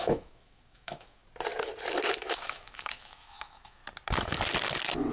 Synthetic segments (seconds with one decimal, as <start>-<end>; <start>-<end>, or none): 0.0-1.2; 2.2-3.8